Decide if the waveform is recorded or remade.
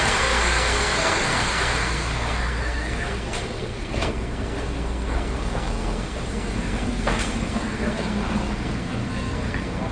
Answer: remade